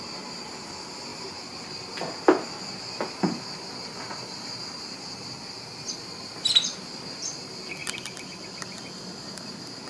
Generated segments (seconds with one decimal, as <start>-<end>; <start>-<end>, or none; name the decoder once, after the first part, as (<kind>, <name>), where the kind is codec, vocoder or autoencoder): none